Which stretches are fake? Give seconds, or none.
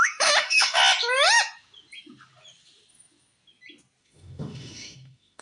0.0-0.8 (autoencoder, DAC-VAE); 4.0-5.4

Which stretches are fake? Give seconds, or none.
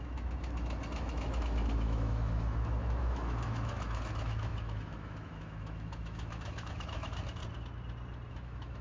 0.0-7.4 (autoencoder, DAC-VAE); 8.3-8.8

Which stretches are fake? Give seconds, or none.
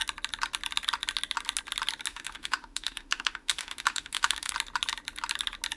2.1-4.5 (autoencoder, DAC-VAE)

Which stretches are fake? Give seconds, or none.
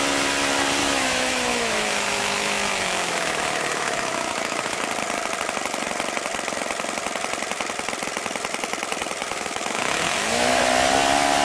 0.8-4.8 (autoencoder, DAC-VAE); 9.2-10.6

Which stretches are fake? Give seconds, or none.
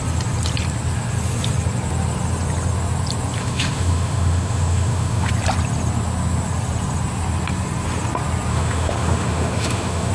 3.4-5.3 (autoencoder, DAC-VAE); 8.5-10.1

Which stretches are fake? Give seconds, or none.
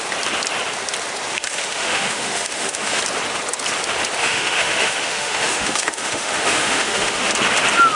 1.3-3.0 (autoencoder, DAC-VAE); 4.2-7.3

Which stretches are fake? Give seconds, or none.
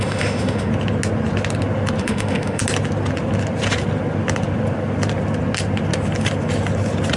0.0-0.7 (autoencoder, DAC-VAE); 2.0-2.6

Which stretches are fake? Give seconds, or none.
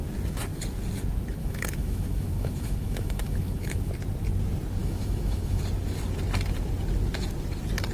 1.4-3.9 (autoencoder, DAC-VAE); 4.8-5.6